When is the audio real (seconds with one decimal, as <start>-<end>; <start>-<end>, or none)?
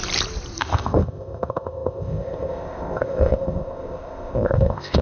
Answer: 0.0-0.6